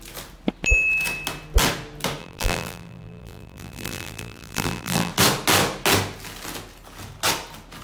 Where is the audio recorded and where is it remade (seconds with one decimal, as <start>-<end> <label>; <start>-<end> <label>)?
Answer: 0.0-2.2 recorded; 2.2-5.1 remade; 5.1-7.8 recorded